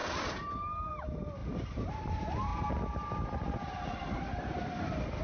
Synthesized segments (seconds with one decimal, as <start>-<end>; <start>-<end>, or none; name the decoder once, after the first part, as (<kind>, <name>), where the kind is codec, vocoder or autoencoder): 0.0-0.9 (vocoder, BigVGAN v2); 1.4-1.9